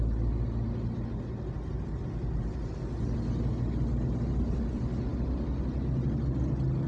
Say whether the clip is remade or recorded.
recorded